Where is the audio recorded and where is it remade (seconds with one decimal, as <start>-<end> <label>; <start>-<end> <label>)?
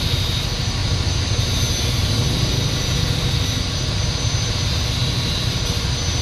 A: 0.0-6.2 recorded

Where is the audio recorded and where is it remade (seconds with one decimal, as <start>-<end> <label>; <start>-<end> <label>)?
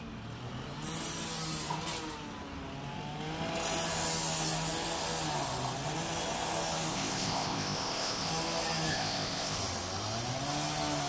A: 0.0-6.9 recorded; 6.9-8.3 remade; 8.3-8.9 recorded; 8.9-9.6 remade; 9.6-11.1 recorded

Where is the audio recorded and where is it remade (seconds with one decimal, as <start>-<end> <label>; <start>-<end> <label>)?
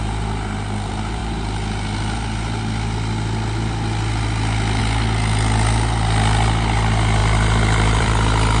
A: 0.0-1.2 recorded; 1.2-4.8 remade; 4.8-7.2 recorded; 7.2-8.1 remade; 8.1-8.6 recorded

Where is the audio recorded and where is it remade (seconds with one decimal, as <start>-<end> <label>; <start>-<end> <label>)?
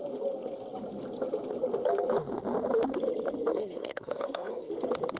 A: 0.0-3.5 recorded; 3.5-4.7 remade; 4.7-5.2 recorded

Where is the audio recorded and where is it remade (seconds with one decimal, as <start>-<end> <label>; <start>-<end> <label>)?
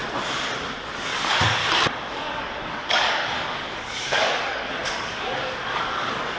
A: 0.0-0.9 recorded; 0.9-1.6 remade; 1.6-2.1 recorded; 2.1-6.4 remade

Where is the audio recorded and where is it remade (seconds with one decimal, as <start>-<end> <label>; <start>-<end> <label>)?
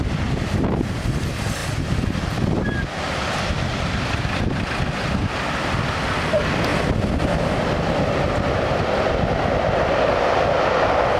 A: 0.0-11.2 recorded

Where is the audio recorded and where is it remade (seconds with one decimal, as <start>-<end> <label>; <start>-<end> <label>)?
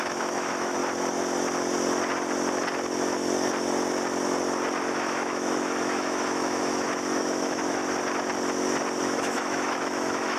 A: 0.0-0.8 remade; 0.8-4.9 recorded; 4.9-7.8 remade; 7.8-9.0 recorded; 9.0-10.4 remade